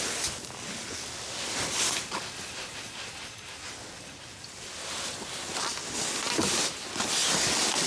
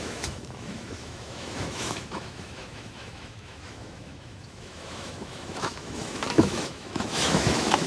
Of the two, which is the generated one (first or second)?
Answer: second